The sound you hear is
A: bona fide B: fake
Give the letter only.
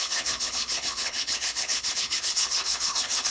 B